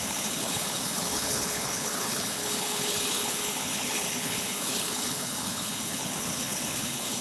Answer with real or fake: fake